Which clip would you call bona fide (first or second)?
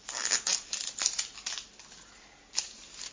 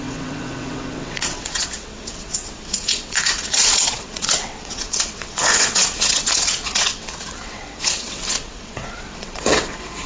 first